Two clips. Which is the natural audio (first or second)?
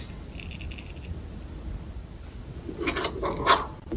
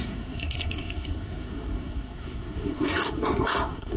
first